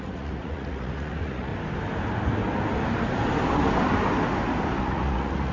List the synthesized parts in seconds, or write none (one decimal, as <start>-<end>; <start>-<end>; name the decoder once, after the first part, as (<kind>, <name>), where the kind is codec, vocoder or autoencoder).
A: 0.0-1.5 (vocoder, Vocos); 4.8-5.5